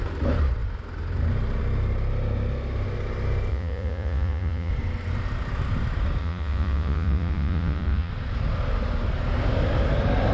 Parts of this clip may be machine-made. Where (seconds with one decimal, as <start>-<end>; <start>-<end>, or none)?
3.5-4.7; 6.2-8.1